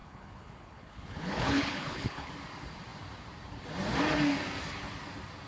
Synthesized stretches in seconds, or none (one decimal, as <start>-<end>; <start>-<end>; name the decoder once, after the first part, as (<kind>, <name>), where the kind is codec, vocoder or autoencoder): 0.0-2.3 (codec, HILCodec)